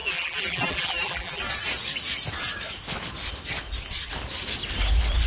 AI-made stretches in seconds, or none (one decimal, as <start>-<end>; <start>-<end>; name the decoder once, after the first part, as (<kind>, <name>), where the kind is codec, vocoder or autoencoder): 0.0-1.4 (vocoder, BigVGAN v2)